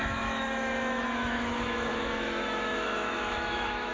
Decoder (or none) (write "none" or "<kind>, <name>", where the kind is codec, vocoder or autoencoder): autoencoder, DAC-VAE